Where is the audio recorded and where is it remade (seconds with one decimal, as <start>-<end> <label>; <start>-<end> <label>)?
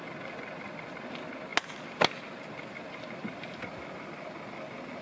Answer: 0.0-5.0 recorded